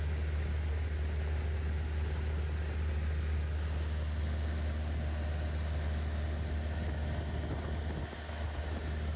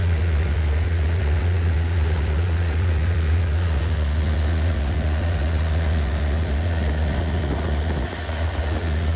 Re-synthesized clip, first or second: second